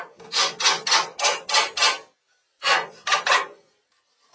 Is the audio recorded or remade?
recorded